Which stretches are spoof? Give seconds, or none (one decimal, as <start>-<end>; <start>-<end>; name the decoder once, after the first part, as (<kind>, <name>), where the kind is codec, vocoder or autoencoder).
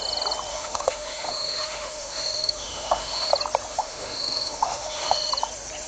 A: 0.5-3.3 (autoencoder, DAC-VAE); 3.7-5.3